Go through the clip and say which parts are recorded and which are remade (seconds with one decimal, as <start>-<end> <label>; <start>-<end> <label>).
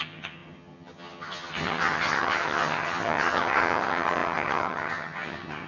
0.0-5.7 remade